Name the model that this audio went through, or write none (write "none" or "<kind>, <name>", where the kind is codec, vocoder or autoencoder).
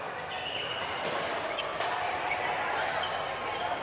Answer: none